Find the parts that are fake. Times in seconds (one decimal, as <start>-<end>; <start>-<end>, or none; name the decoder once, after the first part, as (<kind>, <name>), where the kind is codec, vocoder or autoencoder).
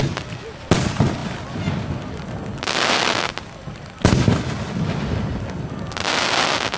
none